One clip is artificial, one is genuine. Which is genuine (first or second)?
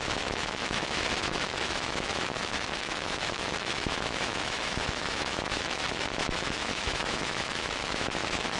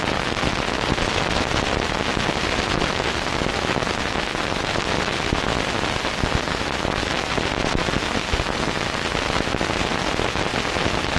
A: second